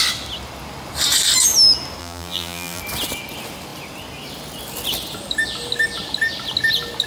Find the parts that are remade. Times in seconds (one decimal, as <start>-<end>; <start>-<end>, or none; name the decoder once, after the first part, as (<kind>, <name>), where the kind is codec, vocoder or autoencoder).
2.0-2.8 (vocoder, BigVGAN v2)